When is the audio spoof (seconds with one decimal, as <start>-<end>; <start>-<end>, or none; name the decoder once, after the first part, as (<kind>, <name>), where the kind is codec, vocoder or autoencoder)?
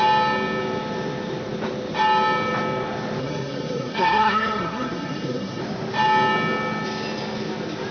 3.2-5.6 (codec, SNAC)